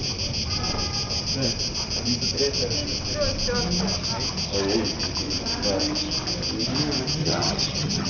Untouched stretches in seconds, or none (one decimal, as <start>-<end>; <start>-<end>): 0.0-7.2